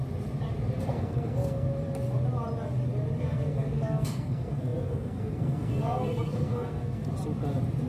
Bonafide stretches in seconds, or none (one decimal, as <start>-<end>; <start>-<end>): 0.0-0.8; 1.7-3.2; 7.0-7.9